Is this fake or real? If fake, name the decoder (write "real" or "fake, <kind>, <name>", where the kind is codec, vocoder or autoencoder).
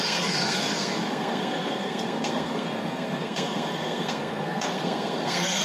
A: fake, codec, SNAC